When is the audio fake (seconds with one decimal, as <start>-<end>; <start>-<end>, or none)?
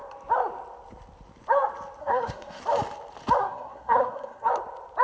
2.0-2.6; 3.4-4.5